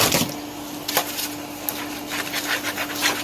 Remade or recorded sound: recorded